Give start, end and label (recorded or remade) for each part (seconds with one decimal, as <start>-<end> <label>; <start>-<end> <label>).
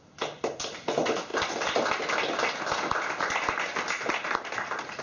0.0-5.0 recorded